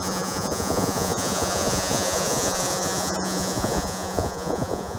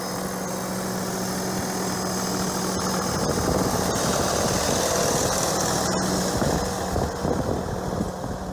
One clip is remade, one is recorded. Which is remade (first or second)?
first